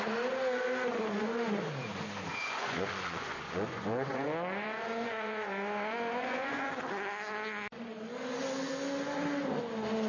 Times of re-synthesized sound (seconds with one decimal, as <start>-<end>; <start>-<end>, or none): 2.3-6.7